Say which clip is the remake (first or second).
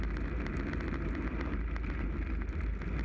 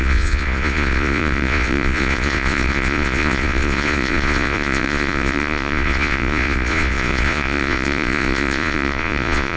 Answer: second